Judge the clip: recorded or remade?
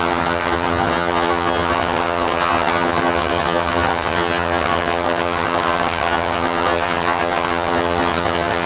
remade